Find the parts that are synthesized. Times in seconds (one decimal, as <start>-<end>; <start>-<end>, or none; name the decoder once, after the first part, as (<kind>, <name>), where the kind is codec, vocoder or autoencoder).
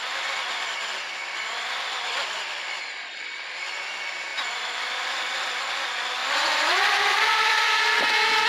6.2-7.5 (vocoder, BigVGAN v2)